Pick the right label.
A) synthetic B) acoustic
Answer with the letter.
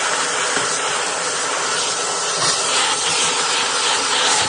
B